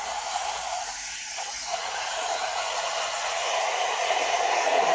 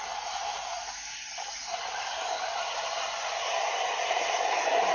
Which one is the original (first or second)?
second